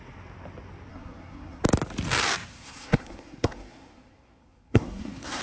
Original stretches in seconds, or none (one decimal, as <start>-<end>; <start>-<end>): 0.0-0.9; 1.6-2.5